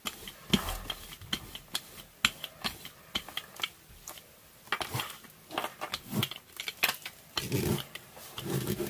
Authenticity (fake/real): real